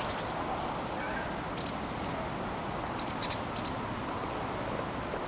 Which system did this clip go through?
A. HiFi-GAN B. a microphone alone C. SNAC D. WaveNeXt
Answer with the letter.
B